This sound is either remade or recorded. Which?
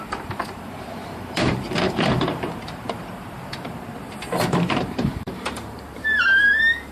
remade